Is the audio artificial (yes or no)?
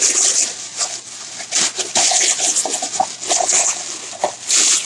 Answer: no